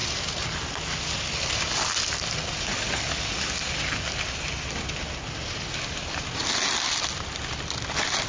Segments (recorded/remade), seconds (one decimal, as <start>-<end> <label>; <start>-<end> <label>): 0.0-8.3 recorded